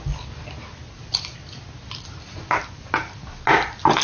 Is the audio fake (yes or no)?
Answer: no